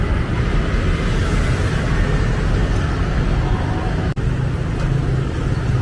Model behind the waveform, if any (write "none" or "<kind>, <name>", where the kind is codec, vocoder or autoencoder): none